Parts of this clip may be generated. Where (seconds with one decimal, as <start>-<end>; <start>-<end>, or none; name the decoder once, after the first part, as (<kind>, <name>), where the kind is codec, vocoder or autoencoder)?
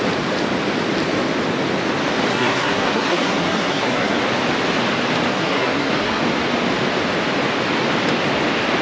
2.3-4.2 (codec, SNAC); 5.3-6.2